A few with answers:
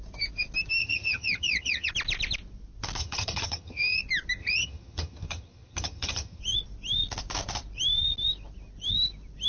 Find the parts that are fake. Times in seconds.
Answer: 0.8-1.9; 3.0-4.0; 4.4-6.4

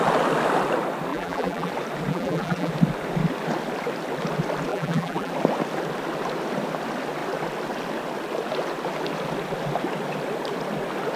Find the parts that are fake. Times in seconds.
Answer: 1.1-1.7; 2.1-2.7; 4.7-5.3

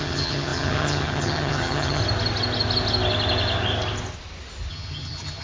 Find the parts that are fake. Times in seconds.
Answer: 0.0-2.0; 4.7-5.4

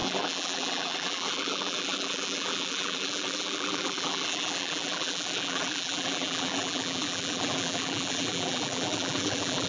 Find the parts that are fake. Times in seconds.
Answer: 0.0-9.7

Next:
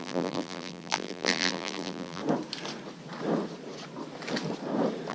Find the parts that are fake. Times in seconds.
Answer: 0.0-2.2